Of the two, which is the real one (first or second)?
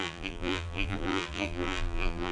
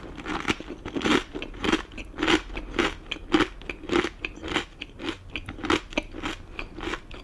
second